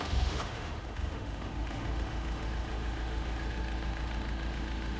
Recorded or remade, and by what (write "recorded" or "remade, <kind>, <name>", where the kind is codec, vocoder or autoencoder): remade, autoencoder, DAC-VAE